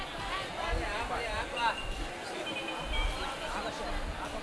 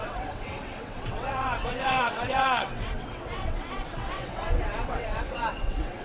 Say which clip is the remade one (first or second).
second